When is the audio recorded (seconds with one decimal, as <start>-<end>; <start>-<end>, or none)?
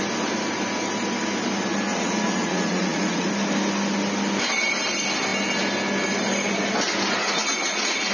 0.0-1.9; 3.3-7.2